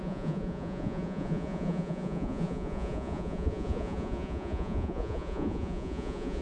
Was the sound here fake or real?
fake